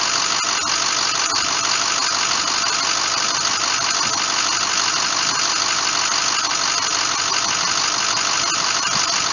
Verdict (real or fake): real